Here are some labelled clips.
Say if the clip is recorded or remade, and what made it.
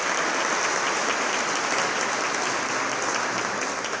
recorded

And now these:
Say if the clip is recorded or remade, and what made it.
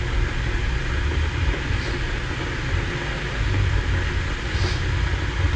recorded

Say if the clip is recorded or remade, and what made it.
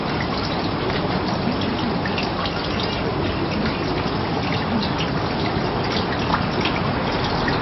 recorded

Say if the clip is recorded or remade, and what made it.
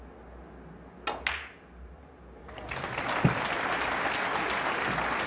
recorded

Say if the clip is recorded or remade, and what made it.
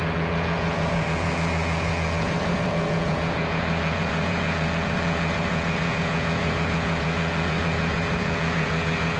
remade, vocoder, Vocos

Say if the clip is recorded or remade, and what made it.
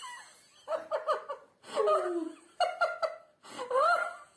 recorded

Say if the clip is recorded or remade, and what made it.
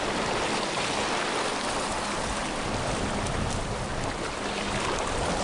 recorded